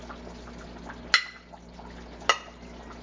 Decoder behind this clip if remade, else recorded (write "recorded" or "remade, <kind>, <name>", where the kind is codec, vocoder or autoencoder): recorded